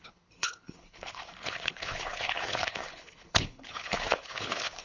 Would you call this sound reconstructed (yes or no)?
yes